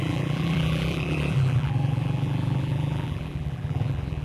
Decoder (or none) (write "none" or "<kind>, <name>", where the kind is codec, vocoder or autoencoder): vocoder, BigVGAN v2